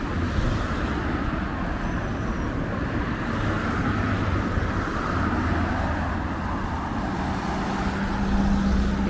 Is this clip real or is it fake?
real